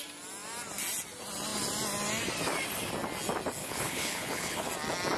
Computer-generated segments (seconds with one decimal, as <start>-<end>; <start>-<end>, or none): 3.6-4.7